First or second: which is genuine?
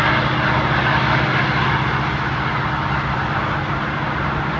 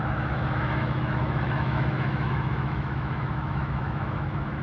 first